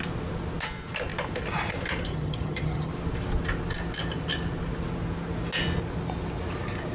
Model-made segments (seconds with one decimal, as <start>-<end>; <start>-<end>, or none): 2.1-2.9